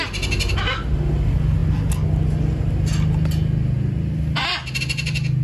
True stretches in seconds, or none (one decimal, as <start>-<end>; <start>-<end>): 0.0-5.4